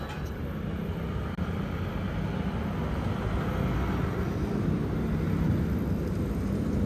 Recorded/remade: recorded